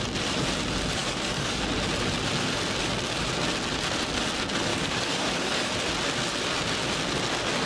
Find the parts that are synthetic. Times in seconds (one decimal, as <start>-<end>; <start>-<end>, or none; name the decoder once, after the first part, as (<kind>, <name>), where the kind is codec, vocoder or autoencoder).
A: 1.0-1.6 (codec, DAC); 4.7-5.7